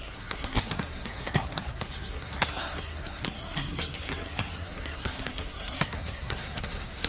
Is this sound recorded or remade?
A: remade